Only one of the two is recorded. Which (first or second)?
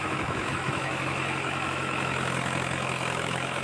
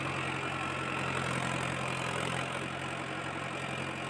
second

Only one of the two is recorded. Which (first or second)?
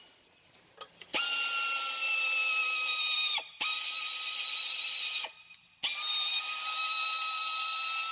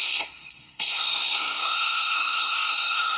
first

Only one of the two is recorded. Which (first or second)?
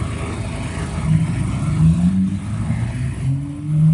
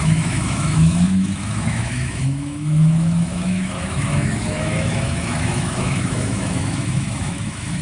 first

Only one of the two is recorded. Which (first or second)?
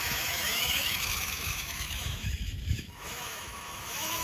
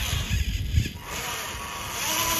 second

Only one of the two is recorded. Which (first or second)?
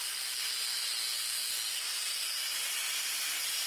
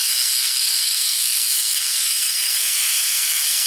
first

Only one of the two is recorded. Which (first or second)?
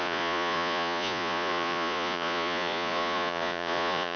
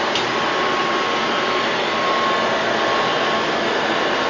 second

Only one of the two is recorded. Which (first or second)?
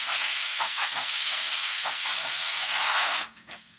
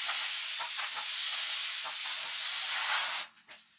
second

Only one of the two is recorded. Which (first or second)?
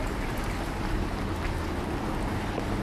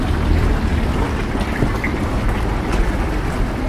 first